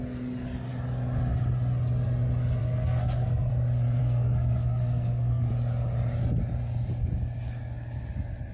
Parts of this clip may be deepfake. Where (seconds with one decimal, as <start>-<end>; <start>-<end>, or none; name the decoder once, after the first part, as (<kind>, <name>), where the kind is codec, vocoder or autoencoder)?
2.6-3.5 (codec, SNAC); 4.0-5.5